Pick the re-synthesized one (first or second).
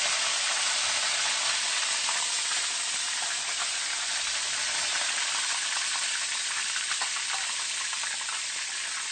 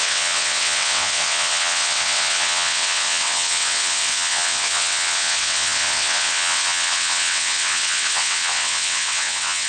second